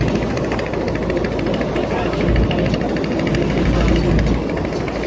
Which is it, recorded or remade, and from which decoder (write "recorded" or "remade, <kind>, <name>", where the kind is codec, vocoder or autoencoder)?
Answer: recorded